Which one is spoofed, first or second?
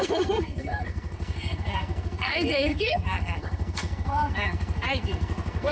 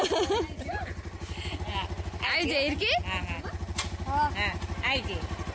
first